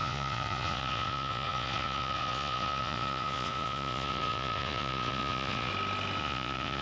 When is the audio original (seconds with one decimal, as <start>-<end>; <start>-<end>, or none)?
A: 5.7-6.2